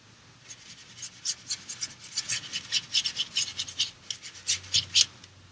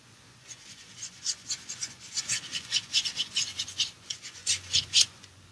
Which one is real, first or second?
first